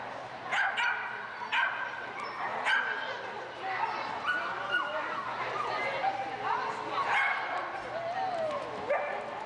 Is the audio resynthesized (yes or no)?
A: no